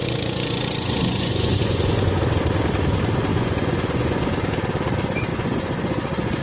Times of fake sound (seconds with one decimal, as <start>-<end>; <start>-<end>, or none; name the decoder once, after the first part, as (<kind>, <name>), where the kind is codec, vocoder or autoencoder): 0.0-2.2 (vocoder, Vocos); 3.3-4.5; 5.3-6.4